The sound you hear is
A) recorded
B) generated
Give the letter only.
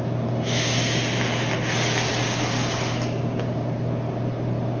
A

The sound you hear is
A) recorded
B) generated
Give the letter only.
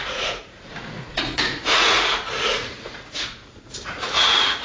B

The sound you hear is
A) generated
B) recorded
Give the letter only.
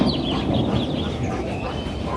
B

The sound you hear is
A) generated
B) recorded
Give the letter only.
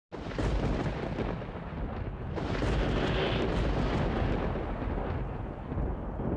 B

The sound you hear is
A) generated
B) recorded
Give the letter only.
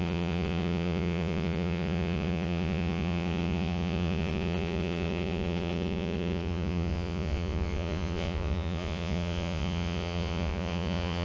A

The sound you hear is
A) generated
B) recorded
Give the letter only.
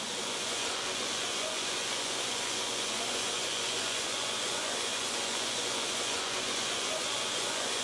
A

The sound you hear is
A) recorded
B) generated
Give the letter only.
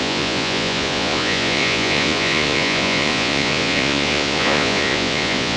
B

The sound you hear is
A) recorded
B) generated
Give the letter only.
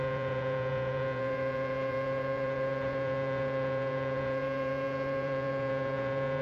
B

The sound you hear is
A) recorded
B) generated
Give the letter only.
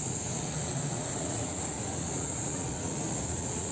B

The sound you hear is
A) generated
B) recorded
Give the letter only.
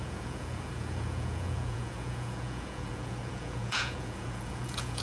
A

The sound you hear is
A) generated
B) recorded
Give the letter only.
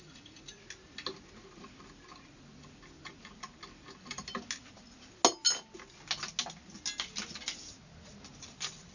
B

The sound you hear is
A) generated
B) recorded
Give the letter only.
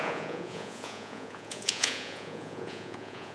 A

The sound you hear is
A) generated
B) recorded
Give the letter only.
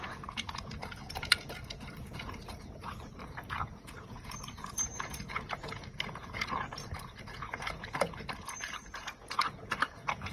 A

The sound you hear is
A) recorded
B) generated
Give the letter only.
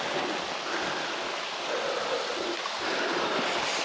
A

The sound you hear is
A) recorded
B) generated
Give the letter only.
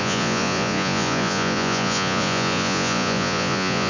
B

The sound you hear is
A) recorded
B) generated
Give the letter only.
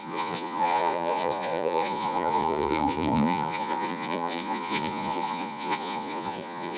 B